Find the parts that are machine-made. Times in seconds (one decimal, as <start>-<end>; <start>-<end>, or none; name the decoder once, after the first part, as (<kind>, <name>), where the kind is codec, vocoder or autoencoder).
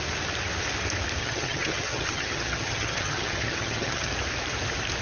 1.2-4.1 (vocoder, HiFi-GAN)